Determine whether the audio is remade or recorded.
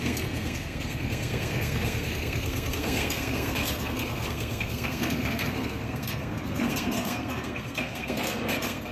remade